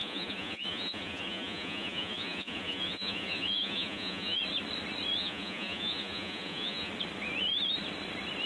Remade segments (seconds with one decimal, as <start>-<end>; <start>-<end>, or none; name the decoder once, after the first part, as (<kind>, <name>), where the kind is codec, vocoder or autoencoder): 0.0-4.4 (vocoder, Vocos); 5.2-6.9